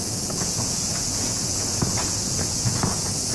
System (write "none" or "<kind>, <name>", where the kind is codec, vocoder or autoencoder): vocoder, Vocos